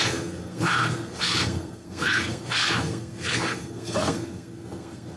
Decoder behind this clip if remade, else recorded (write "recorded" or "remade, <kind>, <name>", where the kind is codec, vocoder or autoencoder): remade, codec, SNAC